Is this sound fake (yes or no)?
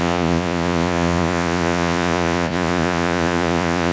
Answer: yes